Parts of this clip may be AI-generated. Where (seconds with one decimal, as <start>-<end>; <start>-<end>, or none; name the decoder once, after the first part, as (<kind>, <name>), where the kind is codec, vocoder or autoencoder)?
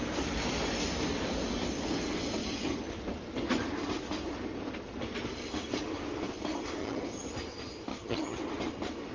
6.8-7.3 (vocoder, HiFi-GAN); 7.9-8.4